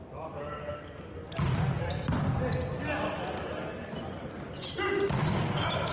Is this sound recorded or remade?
recorded